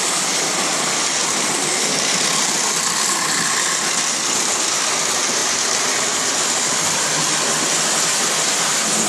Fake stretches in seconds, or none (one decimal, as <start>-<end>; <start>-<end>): none